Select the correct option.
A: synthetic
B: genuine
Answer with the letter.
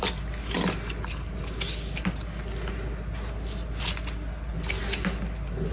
B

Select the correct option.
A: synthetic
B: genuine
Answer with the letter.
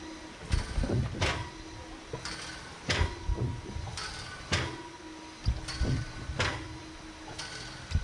B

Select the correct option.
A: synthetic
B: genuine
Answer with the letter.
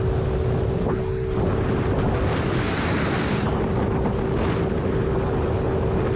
B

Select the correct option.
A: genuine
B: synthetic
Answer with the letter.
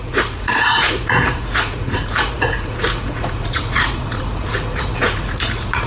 B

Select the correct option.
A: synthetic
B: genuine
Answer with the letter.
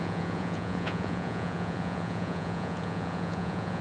A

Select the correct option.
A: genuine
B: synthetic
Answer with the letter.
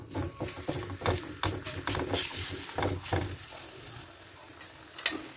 A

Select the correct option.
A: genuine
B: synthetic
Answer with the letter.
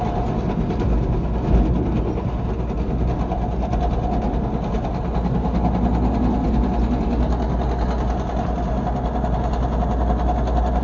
A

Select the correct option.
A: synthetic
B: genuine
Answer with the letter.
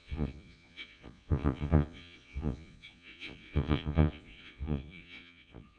A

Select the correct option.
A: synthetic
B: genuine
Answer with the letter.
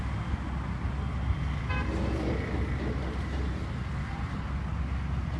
B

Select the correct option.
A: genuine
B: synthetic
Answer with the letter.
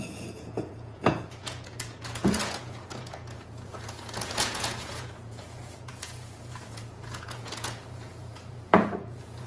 B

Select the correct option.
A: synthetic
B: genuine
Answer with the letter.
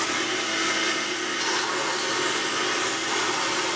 B